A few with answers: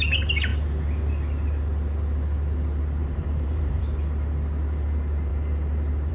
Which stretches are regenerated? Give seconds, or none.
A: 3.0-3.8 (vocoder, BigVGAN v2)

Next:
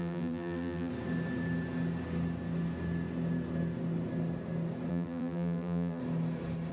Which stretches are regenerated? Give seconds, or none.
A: 0.0-0.9 (vocoder, BigVGAN v2); 4.9-6.0

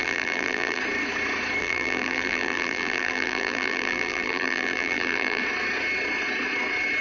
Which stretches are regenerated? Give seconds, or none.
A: 0.0-0.8 (vocoder, BigVGAN v2); 1.6-5.4

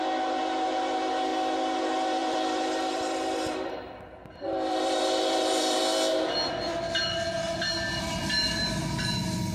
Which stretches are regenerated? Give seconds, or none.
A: 2.2-5.8 (vocoder, BigVGAN v2)

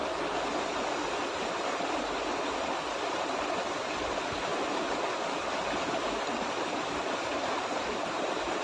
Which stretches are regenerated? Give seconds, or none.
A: 0.0-3.1 (vocoder, BigVGAN v2); 4.5-8.6

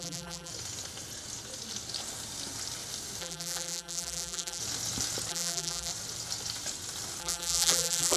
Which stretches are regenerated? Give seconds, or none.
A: 0.0-0.5 (vocoder, BigVGAN v2); 3.2-4.6; 5.3-5.9; 7.2-8.2

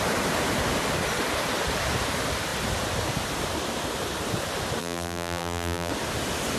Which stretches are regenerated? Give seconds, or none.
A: 4.8-5.9 (vocoder, BigVGAN v2)

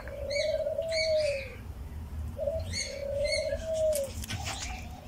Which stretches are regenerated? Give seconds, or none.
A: 0.0-3.0 (vocoder, BigVGAN v2)